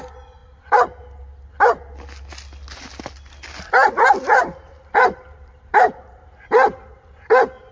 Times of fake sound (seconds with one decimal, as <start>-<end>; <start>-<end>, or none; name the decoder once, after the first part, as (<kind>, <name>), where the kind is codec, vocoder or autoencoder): 4.3-5.9 (vocoder, BigVGAN v2)